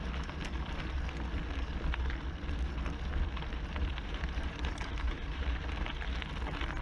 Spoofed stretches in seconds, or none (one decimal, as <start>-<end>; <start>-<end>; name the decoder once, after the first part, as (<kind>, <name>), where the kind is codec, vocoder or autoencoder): 3.9-5.6 (vocoder, BigVGAN v2)